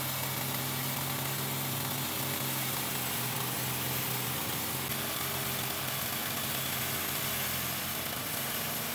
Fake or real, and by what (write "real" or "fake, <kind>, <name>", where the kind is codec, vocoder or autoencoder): real